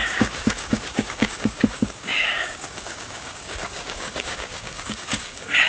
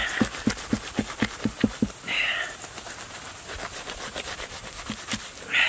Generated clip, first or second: first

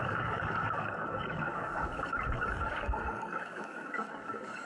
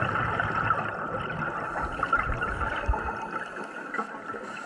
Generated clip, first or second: first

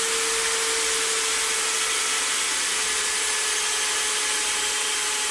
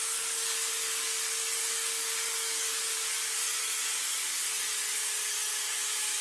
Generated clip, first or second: second